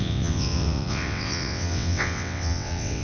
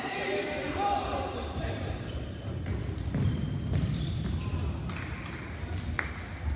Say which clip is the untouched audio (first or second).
second